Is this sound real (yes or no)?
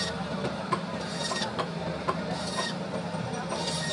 no